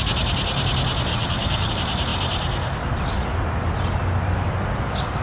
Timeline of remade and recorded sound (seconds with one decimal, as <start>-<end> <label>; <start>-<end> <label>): 0.0-1.1 recorded; 1.1-1.7 remade; 1.7-5.2 recorded